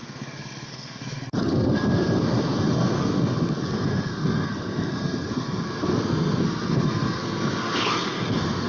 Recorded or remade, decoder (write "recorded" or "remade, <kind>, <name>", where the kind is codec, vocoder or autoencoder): remade, codec, SNAC